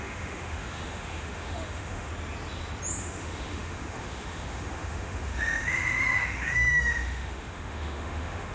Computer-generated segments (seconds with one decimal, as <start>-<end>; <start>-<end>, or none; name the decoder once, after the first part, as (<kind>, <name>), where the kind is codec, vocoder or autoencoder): 0.0-2.1 (autoencoder, DAC-VAE); 3.0-8.5